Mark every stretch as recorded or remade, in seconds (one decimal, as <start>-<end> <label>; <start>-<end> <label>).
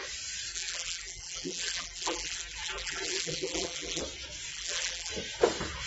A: 0.0-0.5 recorded; 0.5-4.0 remade; 4.0-4.5 recorded; 4.5-5.1 remade; 5.1-5.9 recorded